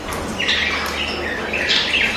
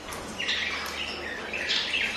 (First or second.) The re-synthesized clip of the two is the second